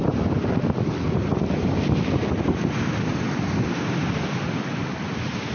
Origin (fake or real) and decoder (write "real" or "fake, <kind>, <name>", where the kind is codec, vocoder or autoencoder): real